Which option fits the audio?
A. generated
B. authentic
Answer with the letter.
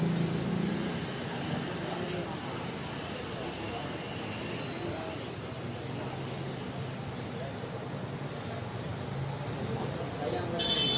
B